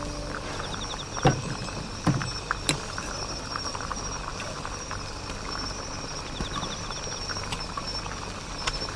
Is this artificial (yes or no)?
no